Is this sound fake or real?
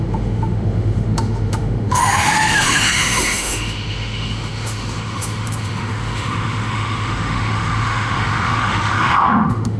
fake